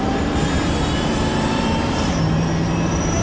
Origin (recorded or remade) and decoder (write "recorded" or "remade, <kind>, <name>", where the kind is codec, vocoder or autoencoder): remade, vocoder, BigVGAN v2